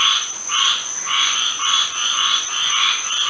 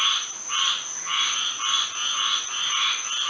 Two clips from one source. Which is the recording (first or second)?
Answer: second